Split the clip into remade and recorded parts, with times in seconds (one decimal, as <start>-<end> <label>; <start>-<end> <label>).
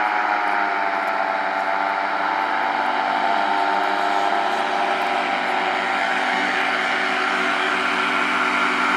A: 0.0-5.9 recorded; 5.9-7.7 remade; 7.7-9.0 recorded